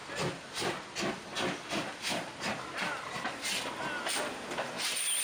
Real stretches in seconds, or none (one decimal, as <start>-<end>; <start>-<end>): 0.0-5.2